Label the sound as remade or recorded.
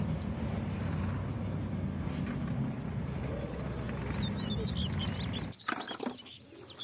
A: recorded